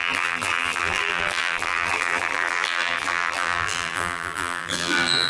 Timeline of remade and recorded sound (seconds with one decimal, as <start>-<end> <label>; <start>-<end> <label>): 0.0-5.3 remade

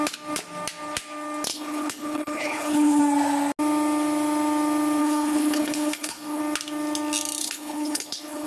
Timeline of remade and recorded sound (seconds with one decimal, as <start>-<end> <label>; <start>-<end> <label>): 0.0-1.5 recorded; 1.5-3.0 remade; 3.0-5.0 recorded; 5.0-6.4 remade; 6.4-7.4 recorded; 7.4-8.5 remade

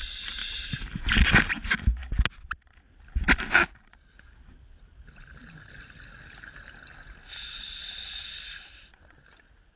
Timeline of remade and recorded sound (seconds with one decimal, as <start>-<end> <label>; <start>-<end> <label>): 0.0-0.4 recorded; 0.4-1.2 remade; 1.2-9.8 recorded

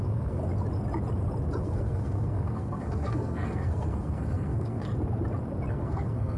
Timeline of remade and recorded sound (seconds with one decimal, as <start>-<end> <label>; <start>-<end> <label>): 0.0-0.4 remade; 0.4-1.6 recorded; 1.6-4.9 remade; 4.9-5.7 recorded; 5.7-6.4 remade

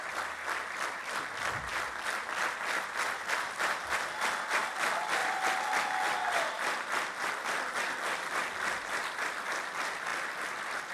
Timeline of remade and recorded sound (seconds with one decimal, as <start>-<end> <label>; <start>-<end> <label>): 0.0-1.7 remade; 1.7-4.6 recorded; 4.6-10.9 remade